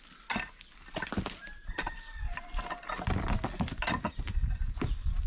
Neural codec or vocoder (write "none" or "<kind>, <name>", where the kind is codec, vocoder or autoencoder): none